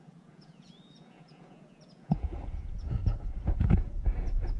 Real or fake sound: fake